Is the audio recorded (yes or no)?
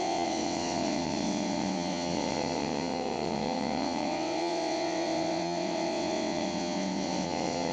no